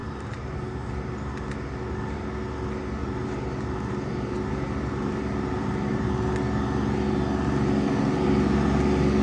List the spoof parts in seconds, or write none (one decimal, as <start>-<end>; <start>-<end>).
0.0-1.1; 3.0-6.1